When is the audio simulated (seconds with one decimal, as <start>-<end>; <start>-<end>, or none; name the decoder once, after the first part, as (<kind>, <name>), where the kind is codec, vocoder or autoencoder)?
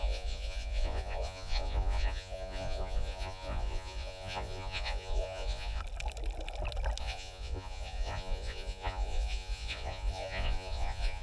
0.0-5.8 (vocoder, Vocos); 7.0-11.2